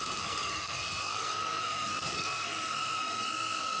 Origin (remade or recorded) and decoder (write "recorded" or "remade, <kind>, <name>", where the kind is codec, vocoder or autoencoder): remade, codec, SNAC